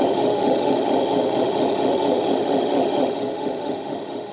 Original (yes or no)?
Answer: no